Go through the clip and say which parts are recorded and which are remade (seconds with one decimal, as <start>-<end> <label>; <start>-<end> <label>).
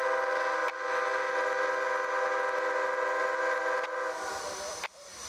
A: 0.0-5.3 recorded